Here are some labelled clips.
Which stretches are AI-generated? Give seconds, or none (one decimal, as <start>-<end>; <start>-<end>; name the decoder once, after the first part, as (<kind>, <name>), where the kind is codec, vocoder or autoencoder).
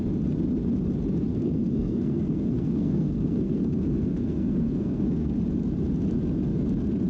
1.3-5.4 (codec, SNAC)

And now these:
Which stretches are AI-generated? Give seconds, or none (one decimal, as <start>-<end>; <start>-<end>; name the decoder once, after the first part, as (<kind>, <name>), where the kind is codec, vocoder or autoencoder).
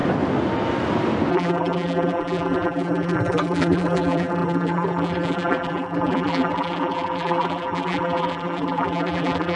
1.3-9.6 (vocoder, BigVGAN v2)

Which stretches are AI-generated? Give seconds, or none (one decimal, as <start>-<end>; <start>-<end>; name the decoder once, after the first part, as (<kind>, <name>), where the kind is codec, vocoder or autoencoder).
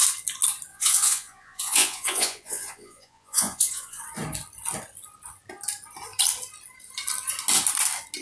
0.7-4.0 (vocoder, Vocos)